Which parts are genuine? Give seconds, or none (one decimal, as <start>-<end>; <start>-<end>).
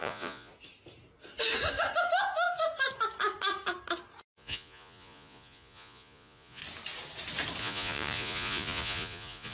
0.5-4.3; 6.6-7.6